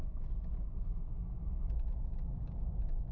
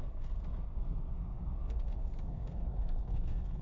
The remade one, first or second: second